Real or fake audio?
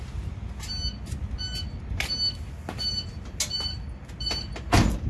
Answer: real